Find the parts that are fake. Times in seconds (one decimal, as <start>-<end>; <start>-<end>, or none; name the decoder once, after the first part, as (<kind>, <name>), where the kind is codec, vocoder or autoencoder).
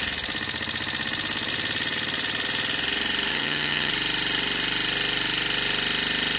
3.3-3.9 (vocoder, HiFi-GAN)